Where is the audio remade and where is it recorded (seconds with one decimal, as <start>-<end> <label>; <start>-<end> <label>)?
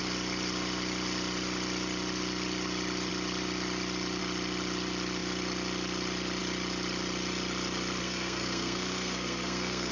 0.0-8.0 recorded; 8.0-9.9 remade